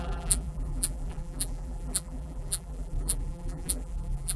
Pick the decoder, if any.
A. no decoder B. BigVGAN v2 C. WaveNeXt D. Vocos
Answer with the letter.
B